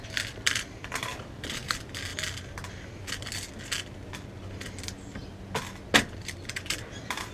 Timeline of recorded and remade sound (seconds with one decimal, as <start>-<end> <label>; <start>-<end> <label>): 0.0-2.1 remade; 2.1-6.1 recorded; 6.1-7.3 remade